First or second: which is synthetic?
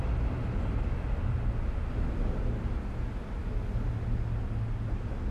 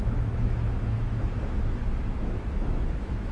second